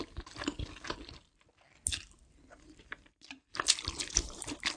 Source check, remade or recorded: recorded